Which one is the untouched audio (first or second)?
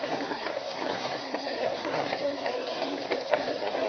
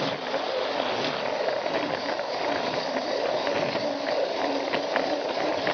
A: second